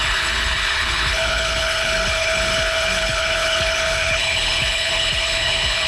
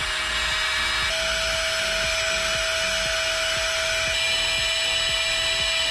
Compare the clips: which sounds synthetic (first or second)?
first